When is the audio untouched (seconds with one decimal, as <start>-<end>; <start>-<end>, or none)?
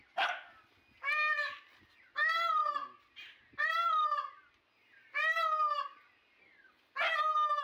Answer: 0.0-7.6